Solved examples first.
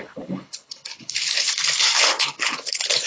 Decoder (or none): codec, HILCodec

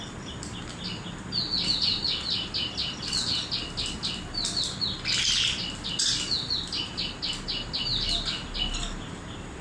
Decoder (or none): none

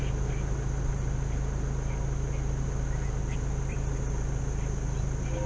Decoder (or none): none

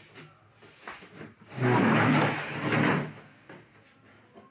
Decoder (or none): none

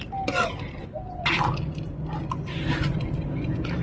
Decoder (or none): none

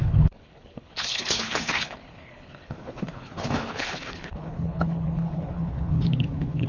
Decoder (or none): codec, HILCodec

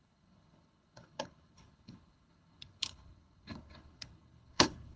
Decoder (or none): codec, HILCodec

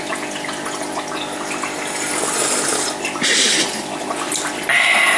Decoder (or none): none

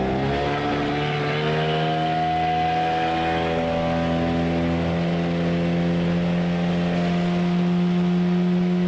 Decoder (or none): none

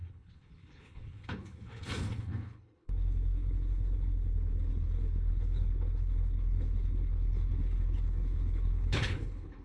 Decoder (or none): codec, HILCodec